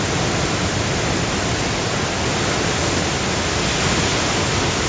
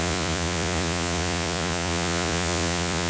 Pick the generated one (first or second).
second